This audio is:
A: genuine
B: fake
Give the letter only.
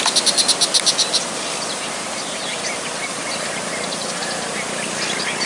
A